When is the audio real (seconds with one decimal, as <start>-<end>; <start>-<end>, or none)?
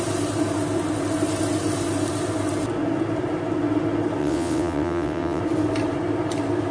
0.0-4.2; 5.4-6.7